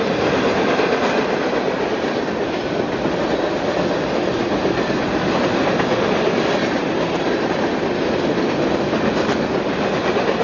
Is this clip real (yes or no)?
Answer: yes